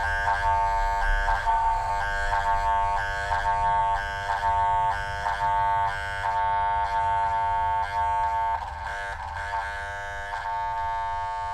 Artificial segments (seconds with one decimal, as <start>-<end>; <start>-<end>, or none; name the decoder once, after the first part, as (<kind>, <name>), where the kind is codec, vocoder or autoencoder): 1.4-1.9 (codec, SNAC)